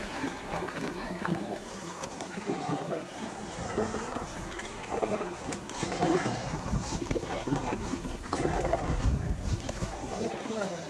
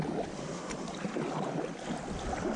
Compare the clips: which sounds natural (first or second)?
second